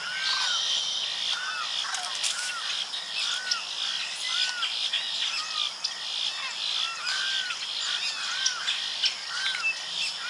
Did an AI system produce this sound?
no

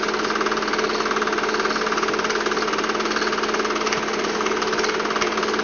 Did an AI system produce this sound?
no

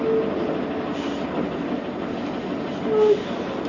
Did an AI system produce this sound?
no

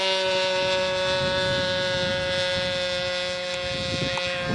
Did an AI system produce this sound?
no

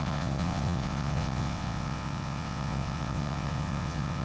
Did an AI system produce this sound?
yes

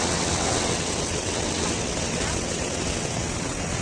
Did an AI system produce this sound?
yes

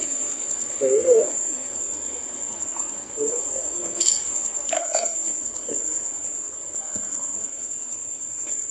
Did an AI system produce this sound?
yes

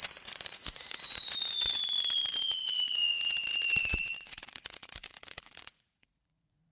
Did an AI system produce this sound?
yes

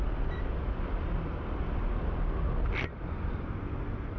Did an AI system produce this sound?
no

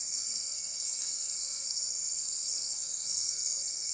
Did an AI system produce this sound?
yes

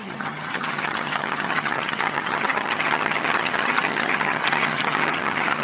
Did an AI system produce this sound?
yes